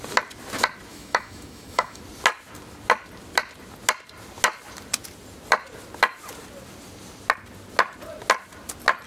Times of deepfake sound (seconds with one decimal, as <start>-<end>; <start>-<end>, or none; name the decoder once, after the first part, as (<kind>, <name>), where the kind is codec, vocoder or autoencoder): 0.9-2.0 (autoencoder, DAC-VAE)